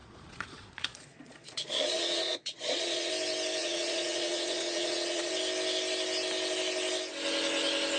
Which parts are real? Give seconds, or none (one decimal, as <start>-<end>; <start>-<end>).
3.1-3.6; 5.3-8.0